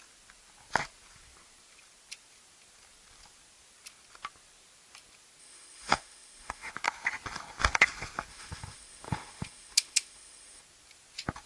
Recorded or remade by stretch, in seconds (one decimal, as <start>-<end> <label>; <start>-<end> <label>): 0.0-5.4 recorded; 5.4-6.7 remade; 6.7-8.3 recorded; 8.3-10.6 remade; 10.6-11.5 recorded